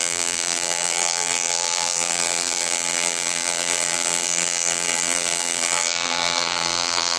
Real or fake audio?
fake